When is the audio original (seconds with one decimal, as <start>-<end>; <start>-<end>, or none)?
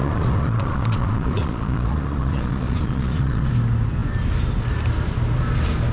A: 3.5-5.9